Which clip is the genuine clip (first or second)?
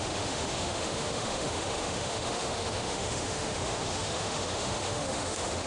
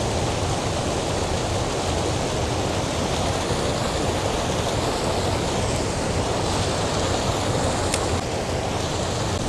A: second